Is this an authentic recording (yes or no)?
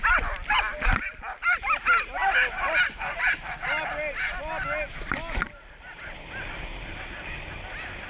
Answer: yes